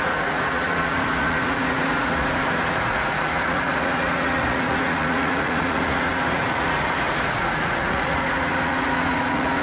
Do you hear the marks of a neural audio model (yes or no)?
yes